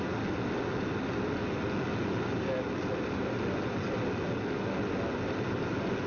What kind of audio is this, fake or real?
real